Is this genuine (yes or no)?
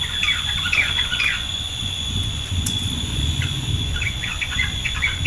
no